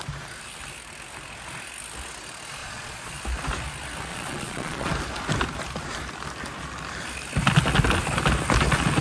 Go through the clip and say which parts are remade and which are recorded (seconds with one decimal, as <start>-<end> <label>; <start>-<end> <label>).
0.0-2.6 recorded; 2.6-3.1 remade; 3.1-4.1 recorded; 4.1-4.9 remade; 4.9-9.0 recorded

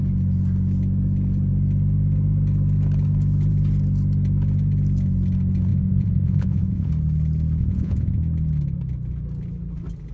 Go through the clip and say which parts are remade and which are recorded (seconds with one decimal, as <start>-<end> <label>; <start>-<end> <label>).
0.0-5.7 recorded; 5.7-6.9 remade; 6.9-7.6 recorded; 7.6-8.2 remade; 8.2-10.1 recorded

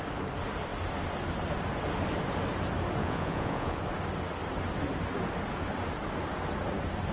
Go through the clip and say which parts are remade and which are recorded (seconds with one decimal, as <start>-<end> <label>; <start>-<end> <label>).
0.0-3.0 recorded; 3.0-3.8 remade; 3.8-7.1 recorded

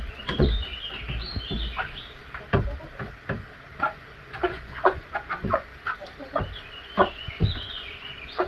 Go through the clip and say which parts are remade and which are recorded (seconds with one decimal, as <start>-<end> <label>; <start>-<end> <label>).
0.0-0.7 remade; 0.7-3.8 recorded; 3.8-5.7 remade; 5.7-6.6 recorded; 6.6-8.5 remade